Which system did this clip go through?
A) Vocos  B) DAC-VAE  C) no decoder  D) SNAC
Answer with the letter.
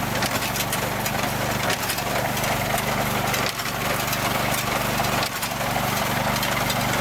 C